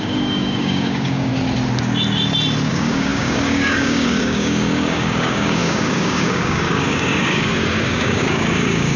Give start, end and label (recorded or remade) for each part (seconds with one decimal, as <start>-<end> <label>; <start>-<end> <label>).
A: 0.0-1.3 remade; 1.3-2.7 recorded; 2.7-9.0 remade